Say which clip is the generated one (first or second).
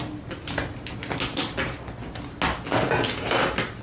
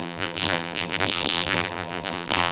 second